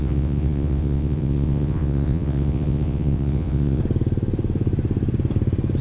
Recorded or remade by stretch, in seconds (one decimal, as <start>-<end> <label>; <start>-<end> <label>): 0.0-3.8 remade; 3.8-5.8 recorded